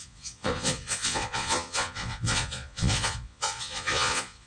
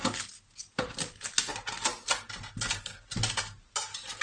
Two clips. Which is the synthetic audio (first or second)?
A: first